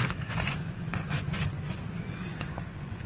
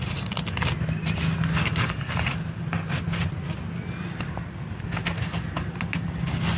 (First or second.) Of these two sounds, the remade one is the first